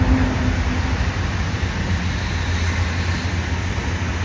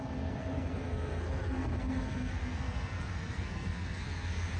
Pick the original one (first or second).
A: first